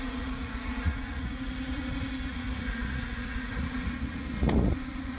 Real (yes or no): no